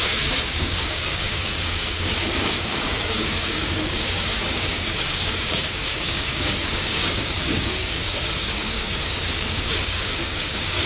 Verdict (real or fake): fake